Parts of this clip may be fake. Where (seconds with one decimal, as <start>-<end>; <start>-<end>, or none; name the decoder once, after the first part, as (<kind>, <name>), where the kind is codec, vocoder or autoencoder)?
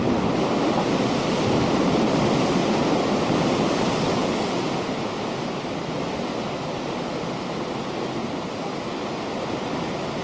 0.0-2.6 (vocoder, BigVGAN v2); 3.7-6.7; 7.3-8.2; 8.7-10.2